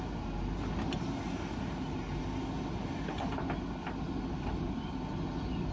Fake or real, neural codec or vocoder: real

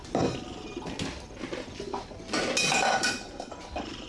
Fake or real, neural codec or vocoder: real